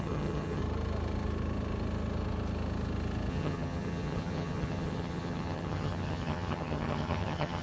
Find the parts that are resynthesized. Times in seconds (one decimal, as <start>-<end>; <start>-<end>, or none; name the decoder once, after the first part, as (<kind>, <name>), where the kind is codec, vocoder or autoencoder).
0.0-0.6 (vocoder, HiFi-GAN); 3.3-7.6